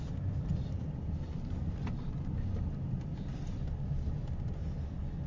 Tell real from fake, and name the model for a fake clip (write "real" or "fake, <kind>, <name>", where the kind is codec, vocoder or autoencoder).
real